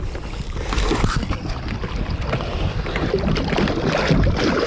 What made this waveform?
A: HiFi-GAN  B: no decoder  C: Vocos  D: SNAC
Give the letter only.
B